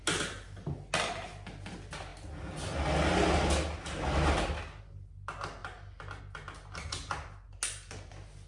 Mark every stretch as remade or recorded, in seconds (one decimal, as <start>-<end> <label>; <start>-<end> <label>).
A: 0.0-8.5 recorded